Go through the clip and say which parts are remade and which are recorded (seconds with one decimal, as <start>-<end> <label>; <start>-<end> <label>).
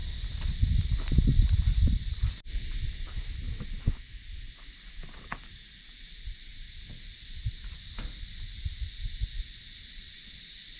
0.0-10.8 recorded